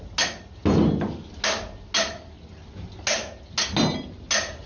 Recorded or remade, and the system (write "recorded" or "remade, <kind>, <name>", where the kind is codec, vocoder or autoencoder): recorded